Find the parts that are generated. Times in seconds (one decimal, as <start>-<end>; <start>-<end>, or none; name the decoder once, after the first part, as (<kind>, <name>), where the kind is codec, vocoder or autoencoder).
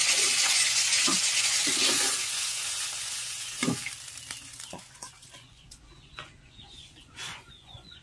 0.0-3.8 (vocoder, Vocos); 4.4-8.0